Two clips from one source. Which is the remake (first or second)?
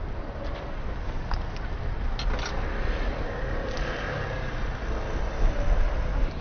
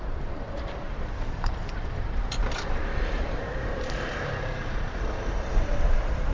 second